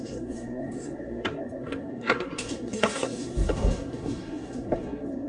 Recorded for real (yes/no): no